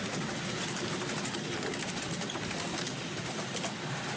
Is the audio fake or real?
real